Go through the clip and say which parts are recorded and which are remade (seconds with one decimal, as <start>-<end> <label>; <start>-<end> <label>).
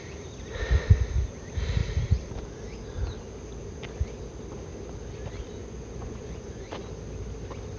0.0-5.6 recorded; 5.6-6.9 remade; 6.9-7.8 recorded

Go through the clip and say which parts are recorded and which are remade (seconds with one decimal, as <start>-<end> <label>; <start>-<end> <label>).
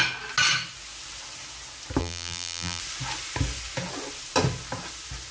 0.0-2.0 recorded; 2.0-2.8 remade; 2.8-5.3 recorded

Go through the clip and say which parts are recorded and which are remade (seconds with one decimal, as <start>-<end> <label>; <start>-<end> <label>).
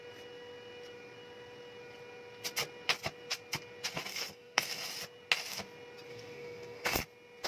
0.0-4.1 recorded; 4.1-4.8 remade; 4.8-6.1 recorded; 6.1-7.0 remade; 7.0-7.5 recorded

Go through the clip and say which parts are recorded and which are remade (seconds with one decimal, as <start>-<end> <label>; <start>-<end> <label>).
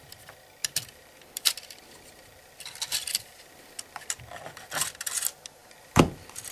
0.0-0.6 recorded; 0.6-4.2 remade; 4.2-5.6 recorded; 5.6-6.5 remade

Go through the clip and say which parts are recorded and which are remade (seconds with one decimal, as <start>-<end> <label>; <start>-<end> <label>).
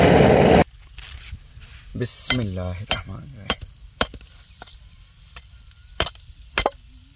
0.0-1.9 recorded; 1.9-6.2 remade; 6.2-7.2 recorded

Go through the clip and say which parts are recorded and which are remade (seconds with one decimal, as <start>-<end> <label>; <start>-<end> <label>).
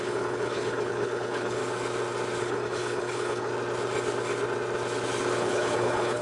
0.0-1.6 remade; 1.6-2.4 recorded; 2.4-3.5 remade; 3.5-5.4 recorded; 5.4-6.2 remade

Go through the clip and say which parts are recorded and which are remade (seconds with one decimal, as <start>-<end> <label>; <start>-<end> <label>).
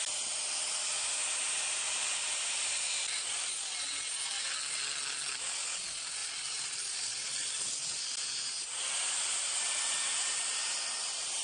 0.0-1.9 recorded; 1.9-3.5 remade; 3.5-6.2 recorded; 6.2-8.0 remade; 8.0-11.4 recorded